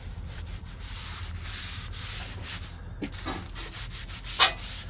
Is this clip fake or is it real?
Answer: real